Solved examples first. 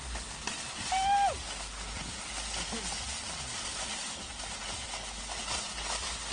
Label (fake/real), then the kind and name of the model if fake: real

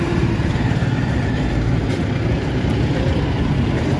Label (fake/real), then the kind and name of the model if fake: fake, vocoder, BigVGAN v2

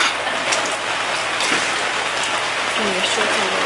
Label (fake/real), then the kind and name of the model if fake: real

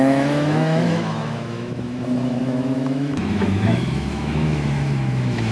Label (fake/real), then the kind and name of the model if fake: fake, autoencoder, DAC-VAE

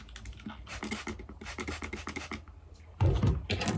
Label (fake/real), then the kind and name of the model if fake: real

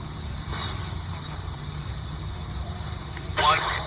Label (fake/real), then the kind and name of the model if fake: fake, vocoder, BigVGAN v2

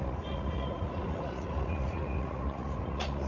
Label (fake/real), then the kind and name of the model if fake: fake, vocoder, Vocos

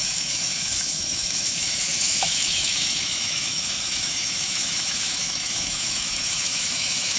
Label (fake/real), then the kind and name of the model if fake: fake, autoencoder, DAC-VAE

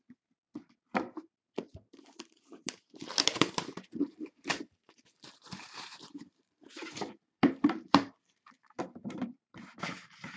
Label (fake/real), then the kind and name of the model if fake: fake, vocoder, BigVGAN v2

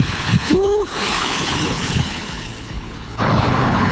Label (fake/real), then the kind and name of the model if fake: fake, codec, HILCodec